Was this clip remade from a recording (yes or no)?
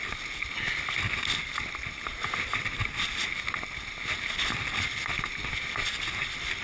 no